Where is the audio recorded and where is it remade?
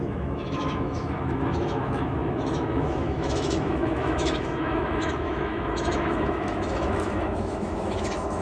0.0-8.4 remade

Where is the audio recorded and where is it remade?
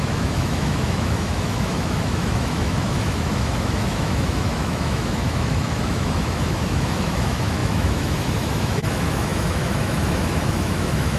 0.0-11.2 remade